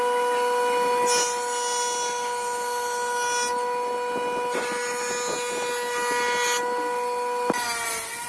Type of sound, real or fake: real